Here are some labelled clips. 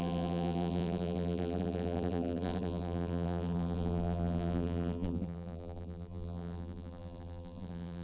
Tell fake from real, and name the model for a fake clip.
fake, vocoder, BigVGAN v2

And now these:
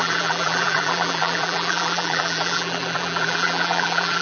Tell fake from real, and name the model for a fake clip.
fake, vocoder, BigVGAN v2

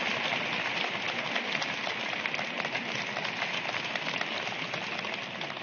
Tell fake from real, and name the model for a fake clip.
real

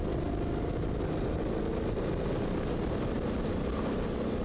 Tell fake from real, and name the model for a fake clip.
real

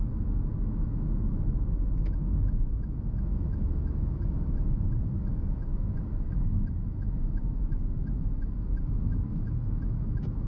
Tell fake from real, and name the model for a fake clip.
fake, autoencoder, DAC-VAE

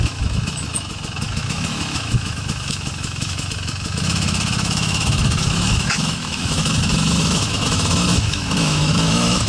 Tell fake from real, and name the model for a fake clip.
fake, autoencoder, DAC-VAE